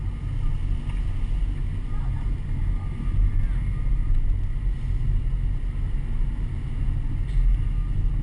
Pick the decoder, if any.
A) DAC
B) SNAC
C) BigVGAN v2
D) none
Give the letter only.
D